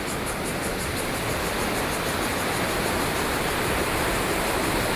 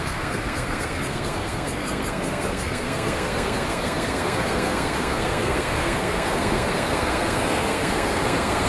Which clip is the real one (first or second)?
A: first